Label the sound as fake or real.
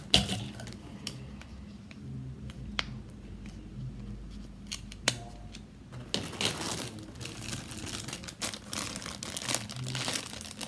real